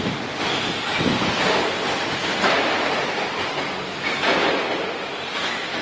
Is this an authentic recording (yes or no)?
yes